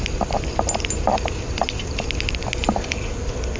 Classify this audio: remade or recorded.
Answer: recorded